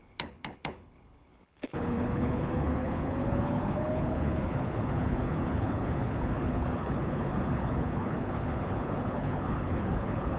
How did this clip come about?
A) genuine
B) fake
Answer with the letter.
B